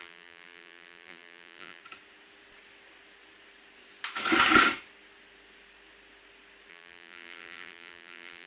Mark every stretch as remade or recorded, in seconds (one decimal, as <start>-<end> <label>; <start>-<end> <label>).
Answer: 0.0-1.8 remade; 1.8-6.7 recorded; 6.7-8.5 remade